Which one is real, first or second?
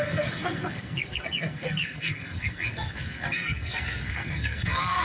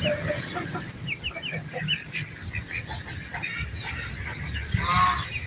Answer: second